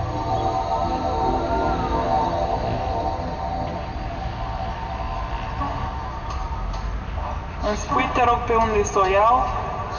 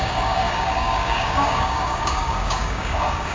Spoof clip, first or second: second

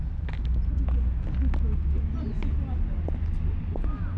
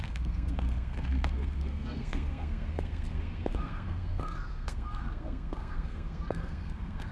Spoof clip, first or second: second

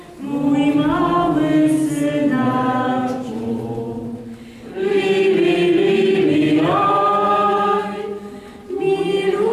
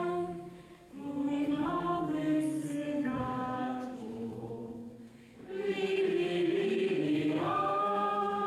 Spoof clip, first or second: second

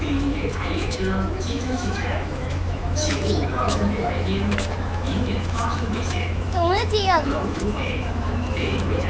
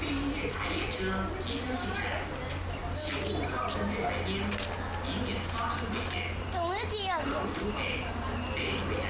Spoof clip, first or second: first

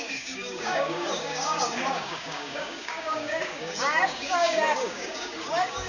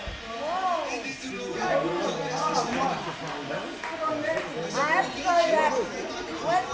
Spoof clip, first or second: first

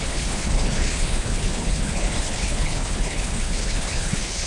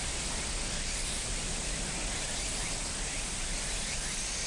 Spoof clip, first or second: first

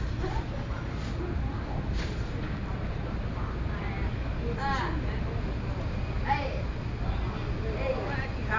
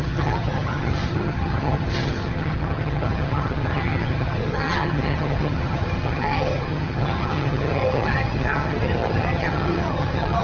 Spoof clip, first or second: second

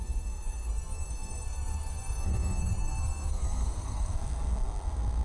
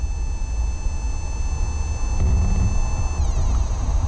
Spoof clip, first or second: first